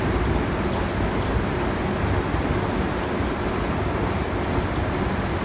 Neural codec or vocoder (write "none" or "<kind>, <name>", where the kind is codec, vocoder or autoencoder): none